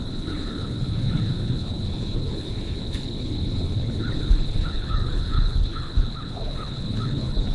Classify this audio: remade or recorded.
remade